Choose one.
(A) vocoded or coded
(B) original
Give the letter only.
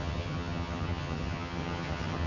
A